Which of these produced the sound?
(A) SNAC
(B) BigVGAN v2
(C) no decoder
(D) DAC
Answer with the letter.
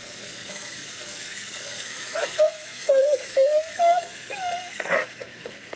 A